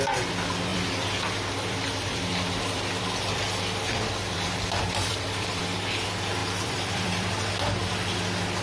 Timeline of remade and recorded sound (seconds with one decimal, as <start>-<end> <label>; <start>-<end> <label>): 0.0-0.7 recorded; 0.7-5.6 remade; 5.6-6.4 recorded; 6.4-7.3 remade; 7.3-8.6 recorded